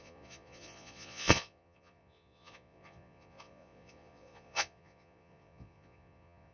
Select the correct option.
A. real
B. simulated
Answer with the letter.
B